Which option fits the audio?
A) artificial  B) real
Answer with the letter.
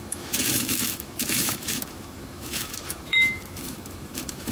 A